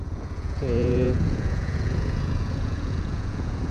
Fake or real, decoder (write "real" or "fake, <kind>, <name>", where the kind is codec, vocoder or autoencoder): fake, vocoder, Vocos